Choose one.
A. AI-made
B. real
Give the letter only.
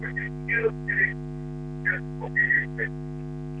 B